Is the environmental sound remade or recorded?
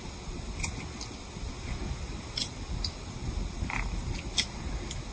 recorded